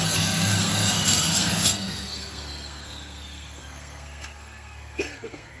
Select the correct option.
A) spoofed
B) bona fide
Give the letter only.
A